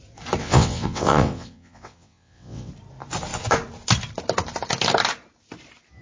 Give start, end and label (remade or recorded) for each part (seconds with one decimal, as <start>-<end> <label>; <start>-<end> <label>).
0.0-0.4 recorded; 0.4-2.7 remade; 2.7-6.0 recorded